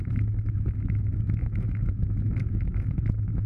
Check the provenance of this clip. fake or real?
fake